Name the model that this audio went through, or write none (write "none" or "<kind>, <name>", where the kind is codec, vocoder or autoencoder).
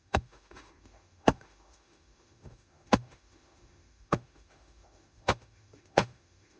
autoencoder, DAC-VAE